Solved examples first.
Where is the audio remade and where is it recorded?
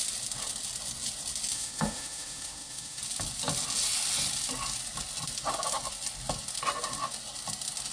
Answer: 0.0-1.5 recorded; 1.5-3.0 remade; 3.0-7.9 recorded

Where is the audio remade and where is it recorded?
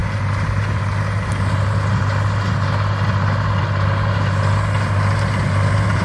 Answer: 0.0-6.0 recorded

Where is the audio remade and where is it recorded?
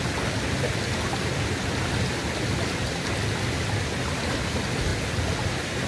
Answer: 0.0-5.9 recorded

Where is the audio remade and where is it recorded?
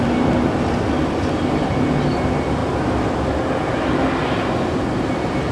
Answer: 0.0-5.5 recorded